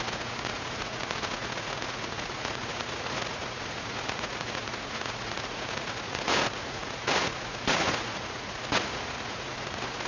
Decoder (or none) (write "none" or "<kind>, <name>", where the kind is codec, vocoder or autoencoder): vocoder, Vocos